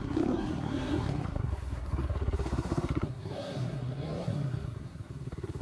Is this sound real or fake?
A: fake